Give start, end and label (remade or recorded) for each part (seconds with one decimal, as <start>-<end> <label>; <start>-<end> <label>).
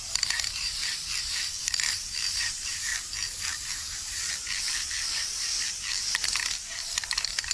0.0-2.9 remade; 2.9-4.6 recorded; 4.6-5.5 remade; 5.5-6.7 recorded; 6.7-7.5 remade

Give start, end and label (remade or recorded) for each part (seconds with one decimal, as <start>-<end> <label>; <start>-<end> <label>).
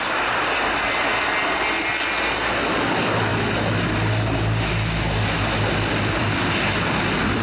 0.0-1.1 remade; 1.1-2.6 recorded; 2.6-3.3 remade; 3.3-5.6 recorded; 5.6-7.4 remade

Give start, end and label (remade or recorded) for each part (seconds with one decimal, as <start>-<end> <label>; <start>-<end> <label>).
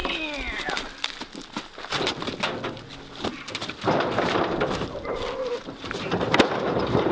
0.0-3.5 recorded; 3.5-7.1 remade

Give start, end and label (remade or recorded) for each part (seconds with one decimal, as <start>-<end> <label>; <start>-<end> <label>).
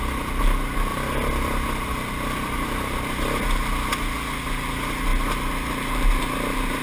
0.0-0.9 recorded; 0.9-3.4 remade; 3.4-6.8 recorded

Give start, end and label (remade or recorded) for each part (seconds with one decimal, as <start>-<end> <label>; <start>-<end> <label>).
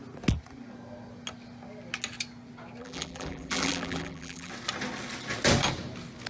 0.0-2.8 recorded; 2.8-4.5 remade; 4.5-6.3 recorded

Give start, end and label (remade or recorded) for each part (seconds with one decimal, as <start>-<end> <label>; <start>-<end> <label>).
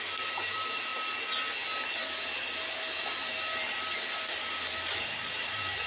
0.0-0.9 remade; 0.9-4.3 recorded; 4.3-5.9 remade